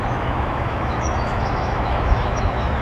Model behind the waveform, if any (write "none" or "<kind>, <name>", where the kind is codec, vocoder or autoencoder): autoencoder, DAC-VAE